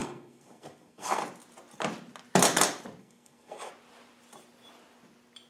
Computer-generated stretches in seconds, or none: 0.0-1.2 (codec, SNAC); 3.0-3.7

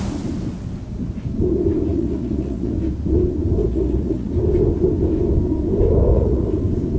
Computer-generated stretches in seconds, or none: 1.9-2.7 (vocoder, Vocos); 3.6-4.3; 6.1-6.6

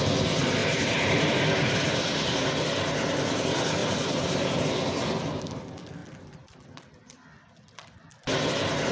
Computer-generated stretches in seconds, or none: 0.6-1.3 (vocoder, BigVGAN v2); 3.8-4.6